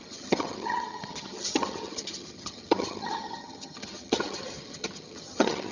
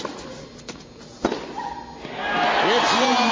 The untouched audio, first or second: second